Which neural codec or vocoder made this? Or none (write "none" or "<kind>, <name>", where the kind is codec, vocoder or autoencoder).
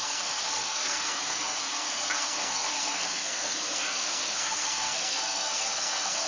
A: codec, SNAC